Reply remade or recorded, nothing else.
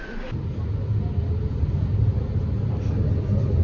recorded